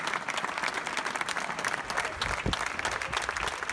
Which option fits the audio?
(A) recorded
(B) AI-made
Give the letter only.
A